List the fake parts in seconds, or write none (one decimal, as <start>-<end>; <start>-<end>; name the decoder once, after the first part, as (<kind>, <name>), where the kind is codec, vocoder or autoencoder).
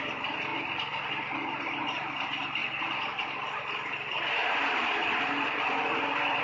0.5-1.1 (vocoder, BigVGAN v2); 2.6-6.4